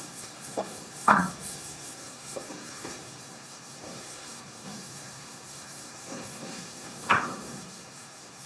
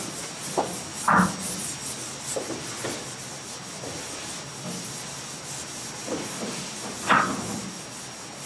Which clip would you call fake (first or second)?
first